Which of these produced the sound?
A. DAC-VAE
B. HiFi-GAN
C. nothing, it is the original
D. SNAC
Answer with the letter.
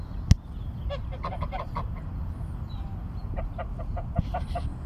C